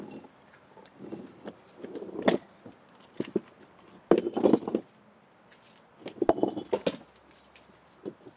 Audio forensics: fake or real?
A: real